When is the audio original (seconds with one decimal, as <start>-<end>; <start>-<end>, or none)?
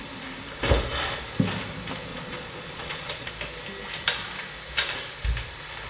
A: 0.0-2.1; 3.3-5.9